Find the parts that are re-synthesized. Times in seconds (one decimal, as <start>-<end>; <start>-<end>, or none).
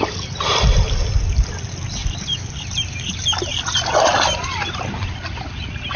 2.0-2.8